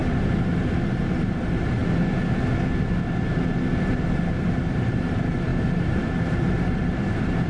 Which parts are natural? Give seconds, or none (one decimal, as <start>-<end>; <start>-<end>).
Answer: 0.0-1.1; 1.8-4.5